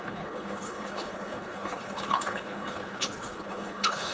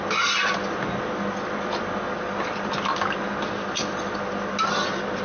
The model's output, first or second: first